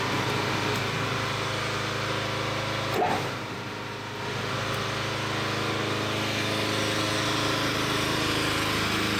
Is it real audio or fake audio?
real